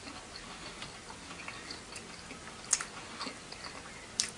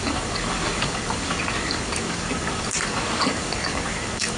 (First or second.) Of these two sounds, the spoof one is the second